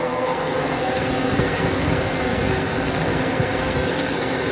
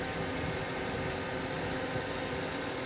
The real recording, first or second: second